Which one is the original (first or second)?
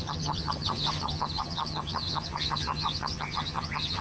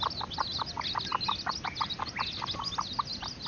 second